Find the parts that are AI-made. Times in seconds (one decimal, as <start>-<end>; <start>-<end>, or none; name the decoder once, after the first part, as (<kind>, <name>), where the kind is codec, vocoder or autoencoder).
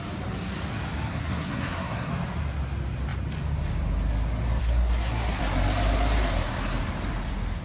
1.1-2.1 (codec, SNAC); 4.6-5.4